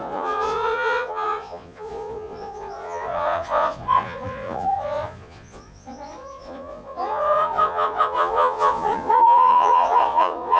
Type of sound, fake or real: fake